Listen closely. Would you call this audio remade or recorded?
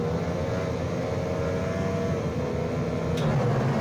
recorded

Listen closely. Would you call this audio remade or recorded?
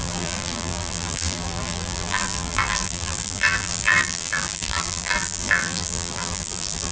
remade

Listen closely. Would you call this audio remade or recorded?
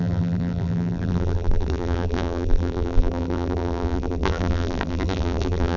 remade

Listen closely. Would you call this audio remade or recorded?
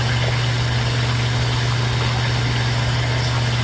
recorded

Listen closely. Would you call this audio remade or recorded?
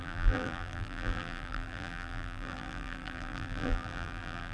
remade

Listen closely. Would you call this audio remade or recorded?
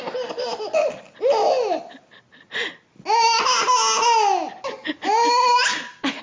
recorded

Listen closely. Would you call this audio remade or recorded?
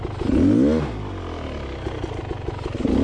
recorded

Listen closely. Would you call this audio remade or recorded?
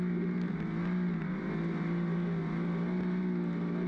recorded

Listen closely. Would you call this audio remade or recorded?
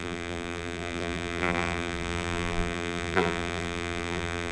remade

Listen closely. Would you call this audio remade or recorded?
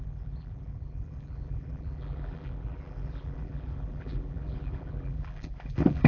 remade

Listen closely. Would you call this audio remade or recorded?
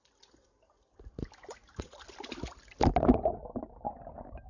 recorded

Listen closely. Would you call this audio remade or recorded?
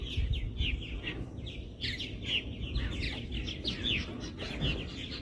recorded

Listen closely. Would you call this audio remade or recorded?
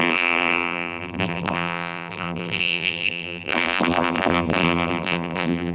remade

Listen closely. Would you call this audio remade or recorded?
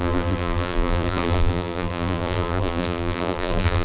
remade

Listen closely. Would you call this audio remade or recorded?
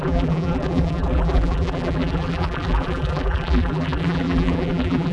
remade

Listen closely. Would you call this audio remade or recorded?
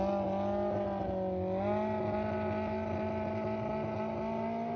recorded